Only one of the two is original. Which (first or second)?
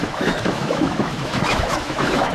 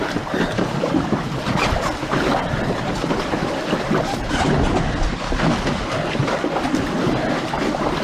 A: second